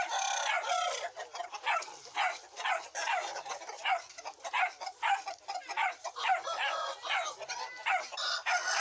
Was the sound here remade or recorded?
recorded